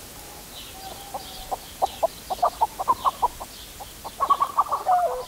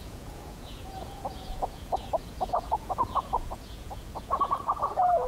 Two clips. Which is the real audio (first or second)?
first